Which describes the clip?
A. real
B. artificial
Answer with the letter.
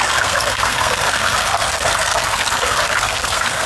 B